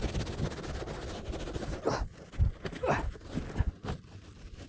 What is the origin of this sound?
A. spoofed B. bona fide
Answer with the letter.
B